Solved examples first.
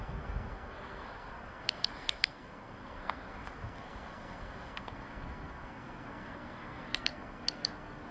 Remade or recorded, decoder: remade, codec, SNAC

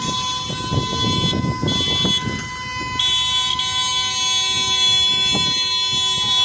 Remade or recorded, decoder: recorded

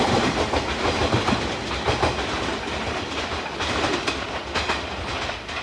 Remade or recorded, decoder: recorded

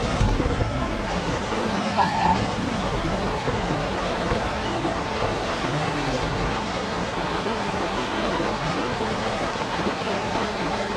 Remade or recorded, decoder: remade, codec, SNAC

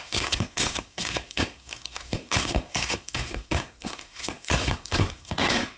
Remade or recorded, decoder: remade, codec, SNAC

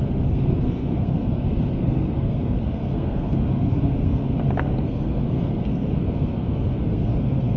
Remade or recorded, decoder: remade, codec, SNAC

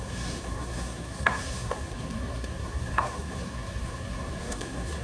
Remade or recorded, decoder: remade, codec, SNAC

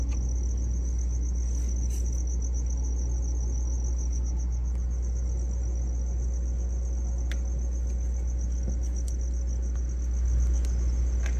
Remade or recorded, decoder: recorded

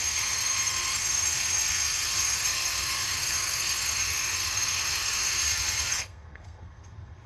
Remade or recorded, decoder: remade, codec, SNAC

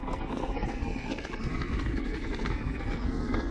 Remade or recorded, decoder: remade, codec, SNAC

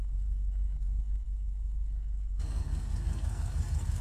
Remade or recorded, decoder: remade, codec, SNAC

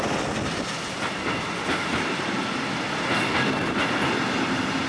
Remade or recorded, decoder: recorded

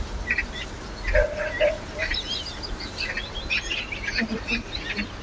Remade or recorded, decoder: recorded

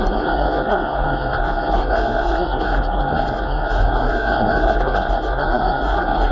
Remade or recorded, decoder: remade, codec, SNAC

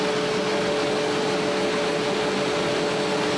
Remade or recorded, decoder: recorded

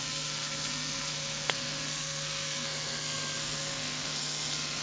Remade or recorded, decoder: remade, codec, SNAC